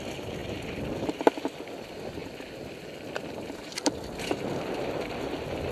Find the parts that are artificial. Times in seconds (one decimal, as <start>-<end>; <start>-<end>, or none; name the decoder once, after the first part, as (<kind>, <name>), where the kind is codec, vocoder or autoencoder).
0.4-1.1 (vocoder, BigVGAN v2)